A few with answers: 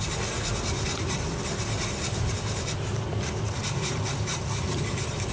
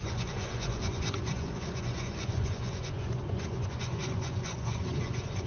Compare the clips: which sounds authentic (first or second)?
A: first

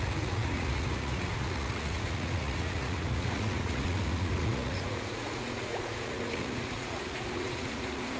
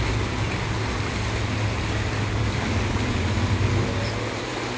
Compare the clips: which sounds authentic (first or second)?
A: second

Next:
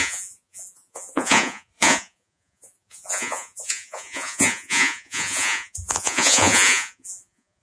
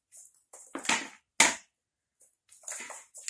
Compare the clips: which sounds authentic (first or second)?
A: second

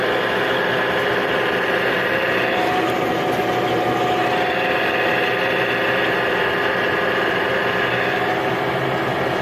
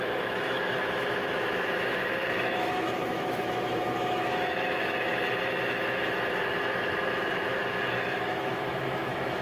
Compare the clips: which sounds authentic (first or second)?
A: first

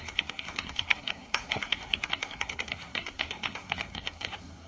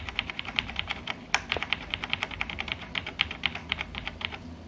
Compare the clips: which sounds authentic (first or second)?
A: second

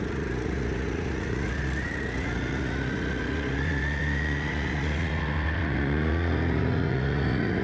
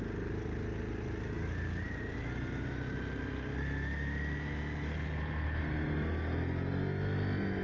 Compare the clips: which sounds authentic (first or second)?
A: second